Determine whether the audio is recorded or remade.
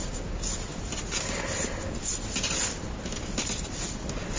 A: recorded